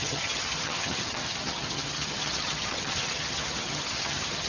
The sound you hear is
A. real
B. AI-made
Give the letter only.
B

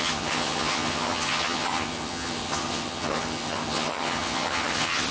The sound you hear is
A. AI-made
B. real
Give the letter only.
A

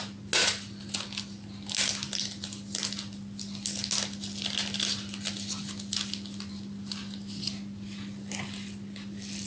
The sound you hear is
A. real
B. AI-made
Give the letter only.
A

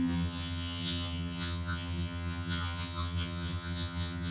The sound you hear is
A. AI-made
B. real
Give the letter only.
A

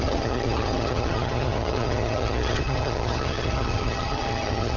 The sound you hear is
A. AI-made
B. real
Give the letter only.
A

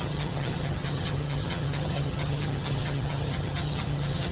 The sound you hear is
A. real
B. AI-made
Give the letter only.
B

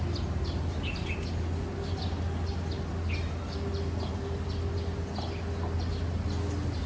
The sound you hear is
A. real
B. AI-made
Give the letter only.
A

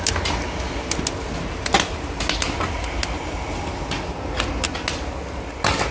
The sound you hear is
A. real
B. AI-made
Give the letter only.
A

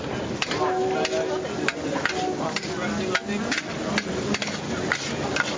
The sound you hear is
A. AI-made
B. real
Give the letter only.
B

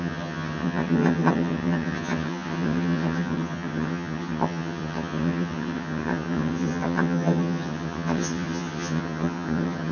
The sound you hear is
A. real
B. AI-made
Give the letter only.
B